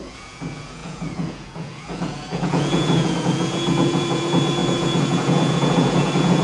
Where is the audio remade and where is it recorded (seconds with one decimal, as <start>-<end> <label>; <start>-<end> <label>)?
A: 0.0-6.4 remade